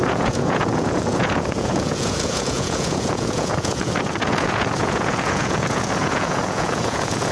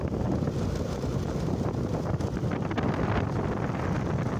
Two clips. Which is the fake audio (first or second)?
first